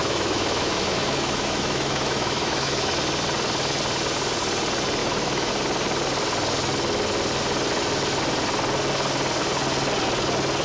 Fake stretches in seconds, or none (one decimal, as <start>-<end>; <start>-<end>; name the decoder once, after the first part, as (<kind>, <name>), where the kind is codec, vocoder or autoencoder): 0.0-2.9 (autoencoder, DAC-VAE); 5.0-5.5